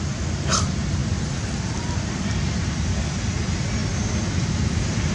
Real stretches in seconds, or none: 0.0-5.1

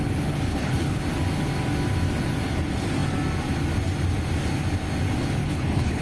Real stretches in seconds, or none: 0.0-0.5; 1.0-5.4